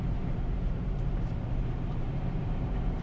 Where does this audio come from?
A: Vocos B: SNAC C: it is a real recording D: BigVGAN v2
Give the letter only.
D